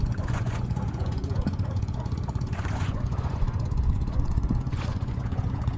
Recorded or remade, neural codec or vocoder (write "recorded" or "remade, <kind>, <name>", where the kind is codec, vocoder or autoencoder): remade, vocoder, Vocos